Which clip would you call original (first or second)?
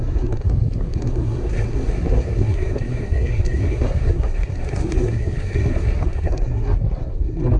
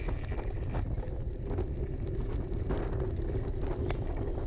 second